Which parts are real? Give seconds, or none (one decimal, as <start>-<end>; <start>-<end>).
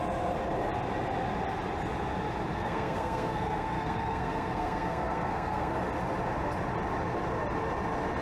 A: 0.0-2.5; 5.7-8.2